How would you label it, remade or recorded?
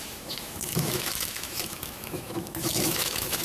remade